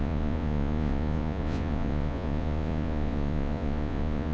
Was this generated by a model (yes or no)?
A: yes